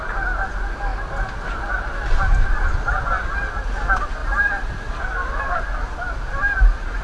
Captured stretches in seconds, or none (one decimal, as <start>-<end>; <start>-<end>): 0.0-7.0